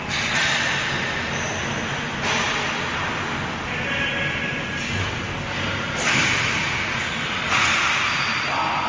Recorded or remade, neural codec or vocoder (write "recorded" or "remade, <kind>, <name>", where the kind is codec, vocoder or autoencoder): recorded